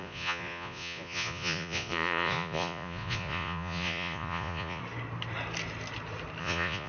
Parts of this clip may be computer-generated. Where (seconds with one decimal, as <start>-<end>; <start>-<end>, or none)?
0.0-4.8; 6.4-6.9